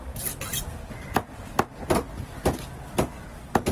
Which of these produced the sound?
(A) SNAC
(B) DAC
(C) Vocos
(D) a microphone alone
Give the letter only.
D